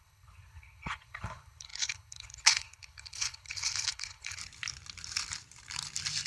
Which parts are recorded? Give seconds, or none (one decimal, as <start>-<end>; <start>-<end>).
4.4-6.3